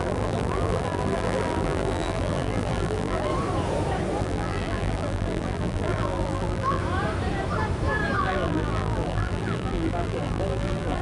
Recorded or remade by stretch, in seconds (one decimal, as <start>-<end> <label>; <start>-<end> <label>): 0.0-3.3 remade; 3.3-4.2 recorded; 4.2-6.8 remade; 6.8-8.2 recorded; 8.2-11.0 remade